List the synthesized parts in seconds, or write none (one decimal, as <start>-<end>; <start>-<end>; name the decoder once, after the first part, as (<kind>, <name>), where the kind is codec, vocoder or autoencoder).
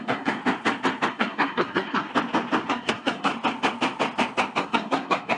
0.0-0.4 (codec, SNAC); 1.1-2.1; 2.7-3.3; 4.6-5.4